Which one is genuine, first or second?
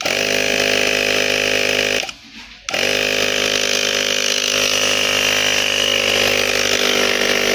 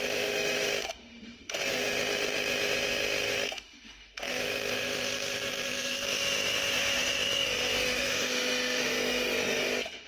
first